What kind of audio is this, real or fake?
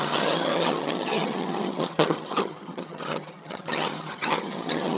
fake